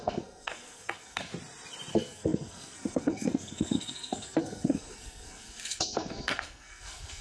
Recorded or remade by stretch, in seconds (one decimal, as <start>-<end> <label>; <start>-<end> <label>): 0.0-1.3 remade; 1.3-1.9 recorded; 1.9-7.2 remade